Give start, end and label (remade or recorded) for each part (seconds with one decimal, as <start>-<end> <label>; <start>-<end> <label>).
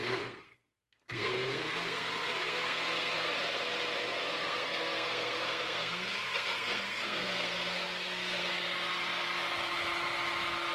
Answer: 0.0-3.3 remade; 3.3-4.0 recorded; 4.0-8.5 remade; 8.5-10.7 recorded